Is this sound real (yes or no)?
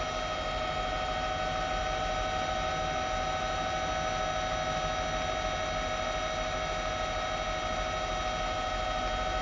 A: yes